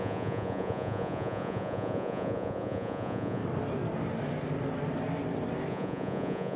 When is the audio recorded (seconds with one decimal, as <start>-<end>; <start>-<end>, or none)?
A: 3.4-5.7